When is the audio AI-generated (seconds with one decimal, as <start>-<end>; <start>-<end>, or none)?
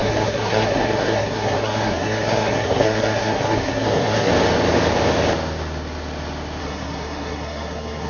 0.0-4.3; 6.6-8.1